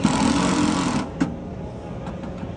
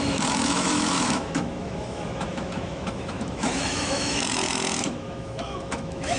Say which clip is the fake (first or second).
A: second